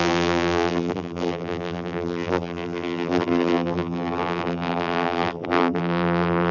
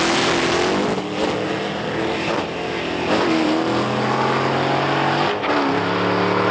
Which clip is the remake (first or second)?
first